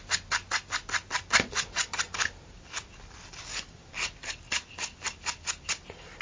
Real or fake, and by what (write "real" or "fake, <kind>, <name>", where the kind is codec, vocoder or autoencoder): real